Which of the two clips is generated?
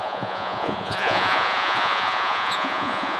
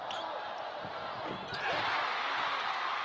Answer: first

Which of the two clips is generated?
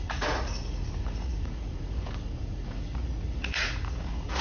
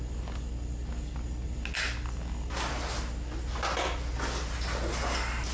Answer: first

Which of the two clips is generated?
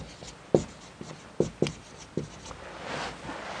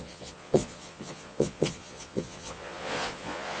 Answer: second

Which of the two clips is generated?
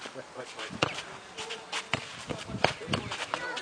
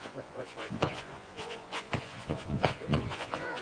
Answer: second